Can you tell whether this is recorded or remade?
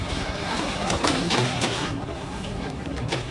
remade